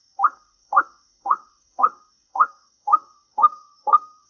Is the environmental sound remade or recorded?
remade